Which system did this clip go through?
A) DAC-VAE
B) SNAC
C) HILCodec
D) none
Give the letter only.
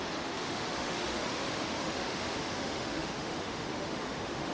A